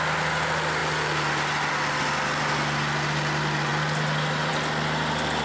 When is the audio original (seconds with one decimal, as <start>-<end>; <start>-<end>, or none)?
0.0-5.4